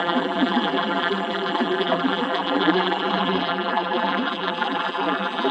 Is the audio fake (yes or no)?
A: yes